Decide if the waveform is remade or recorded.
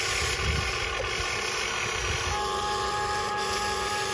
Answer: recorded